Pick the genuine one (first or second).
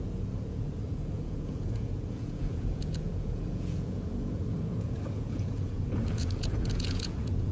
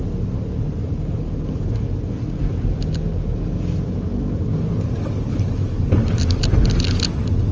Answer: second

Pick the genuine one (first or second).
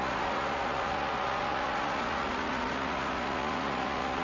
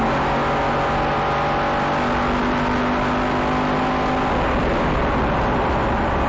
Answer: second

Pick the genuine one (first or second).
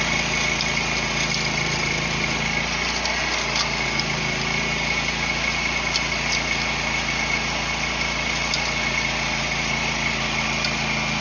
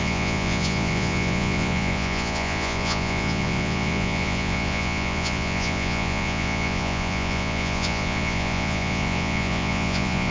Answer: first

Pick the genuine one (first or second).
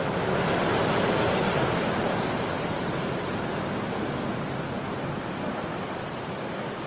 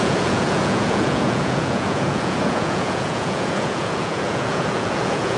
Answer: first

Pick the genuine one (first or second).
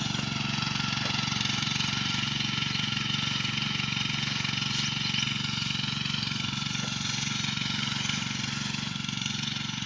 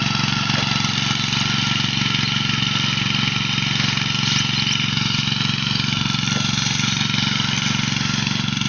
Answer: second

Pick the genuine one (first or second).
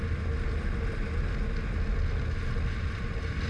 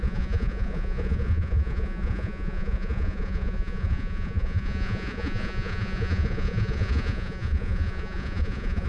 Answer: first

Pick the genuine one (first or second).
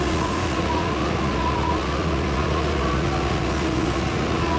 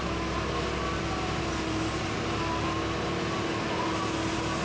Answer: second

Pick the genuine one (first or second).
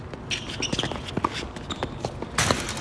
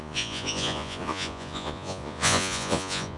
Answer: first